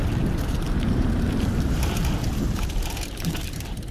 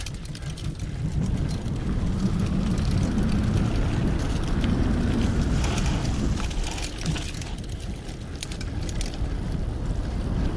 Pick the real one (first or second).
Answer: second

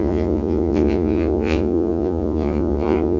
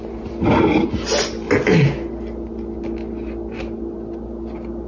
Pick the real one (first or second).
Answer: second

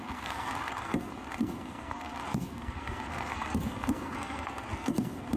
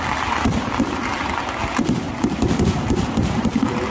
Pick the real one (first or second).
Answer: second